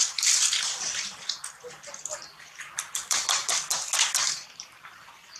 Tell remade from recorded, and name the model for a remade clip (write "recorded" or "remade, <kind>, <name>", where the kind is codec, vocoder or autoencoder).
recorded